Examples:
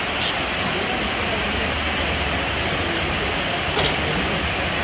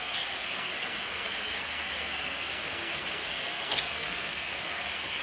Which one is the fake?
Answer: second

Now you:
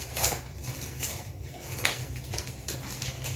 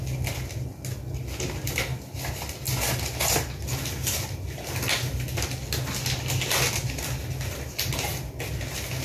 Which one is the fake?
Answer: first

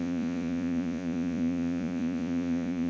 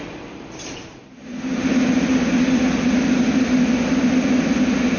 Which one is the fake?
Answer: first